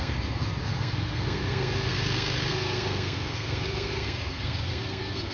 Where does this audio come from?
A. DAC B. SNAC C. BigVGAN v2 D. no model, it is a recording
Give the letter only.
B